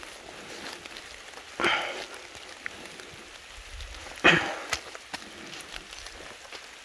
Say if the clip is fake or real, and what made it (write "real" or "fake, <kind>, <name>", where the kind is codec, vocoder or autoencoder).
real